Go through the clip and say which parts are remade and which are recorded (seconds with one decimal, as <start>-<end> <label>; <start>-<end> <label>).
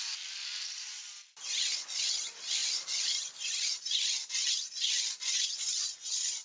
0.0-5.8 remade; 5.8-6.4 recorded